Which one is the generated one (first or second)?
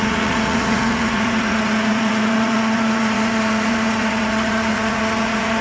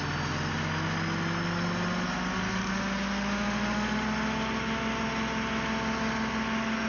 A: first